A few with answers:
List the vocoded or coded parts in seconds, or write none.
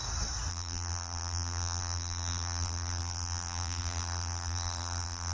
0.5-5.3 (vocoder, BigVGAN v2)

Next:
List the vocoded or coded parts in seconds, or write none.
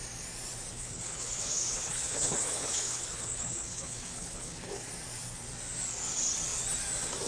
0.7-4.9 (codec, HILCodec)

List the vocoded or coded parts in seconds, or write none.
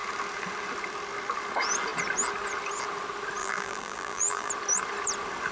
3.4-4.5 (vocoder, BigVGAN v2)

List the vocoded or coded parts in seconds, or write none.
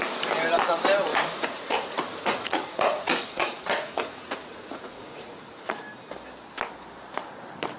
1.1-5.8 (vocoder, Vocos)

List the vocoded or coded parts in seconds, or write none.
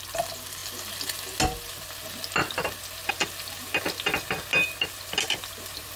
none